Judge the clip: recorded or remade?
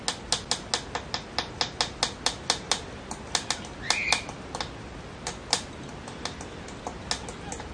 recorded